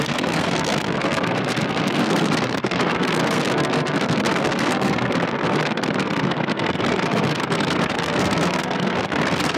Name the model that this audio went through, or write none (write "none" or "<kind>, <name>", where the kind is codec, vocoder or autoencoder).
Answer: codec, SNAC